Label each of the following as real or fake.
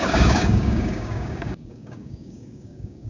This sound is fake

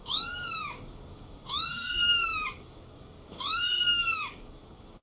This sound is fake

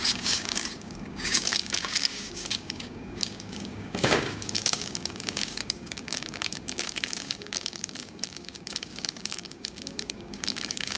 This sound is fake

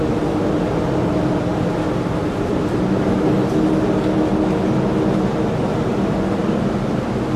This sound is real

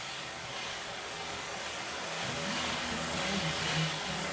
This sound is fake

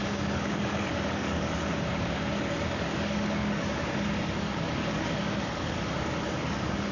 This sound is fake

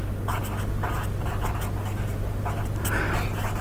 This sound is real